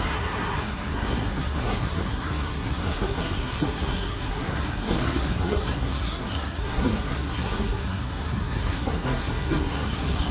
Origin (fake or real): fake